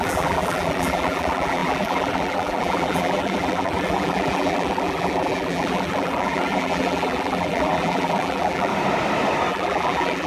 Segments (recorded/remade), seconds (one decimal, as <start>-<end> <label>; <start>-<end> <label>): 0.0-8.7 remade; 8.7-9.5 recorded; 9.5-10.3 remade